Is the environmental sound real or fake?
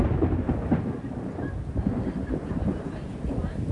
real